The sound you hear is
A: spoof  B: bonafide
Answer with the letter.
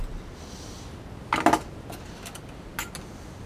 B